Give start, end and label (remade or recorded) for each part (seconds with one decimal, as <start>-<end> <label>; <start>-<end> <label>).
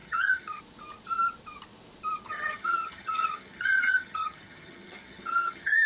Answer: 0.0-0.6 remade; 0.6-2.3 recorded; 2.3-5.9 remade